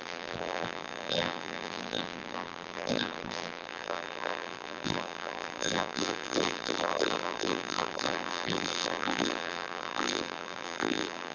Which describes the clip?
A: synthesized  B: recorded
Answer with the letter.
A